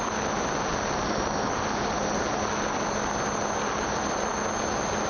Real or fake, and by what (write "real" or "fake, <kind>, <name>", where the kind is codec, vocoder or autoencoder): real